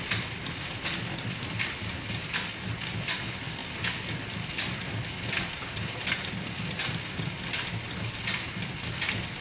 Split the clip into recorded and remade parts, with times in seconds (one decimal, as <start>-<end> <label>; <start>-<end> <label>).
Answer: 0.0-9.4 recorded